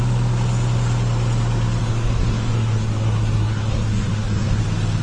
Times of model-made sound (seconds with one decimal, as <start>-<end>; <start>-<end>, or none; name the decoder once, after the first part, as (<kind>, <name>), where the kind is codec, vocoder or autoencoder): 1.8-4.6 (codec, SNAC)

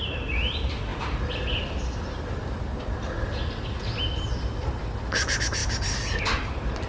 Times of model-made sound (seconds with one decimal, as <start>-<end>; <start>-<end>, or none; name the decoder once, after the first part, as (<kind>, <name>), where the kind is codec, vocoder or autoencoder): none